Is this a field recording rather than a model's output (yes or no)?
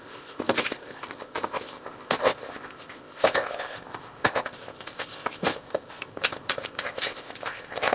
no